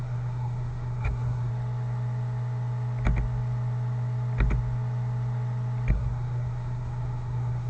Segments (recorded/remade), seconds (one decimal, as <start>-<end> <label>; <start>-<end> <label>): 0.0-1.5 remade; 1.5-5.9 recorded; 5.9-7.7 remade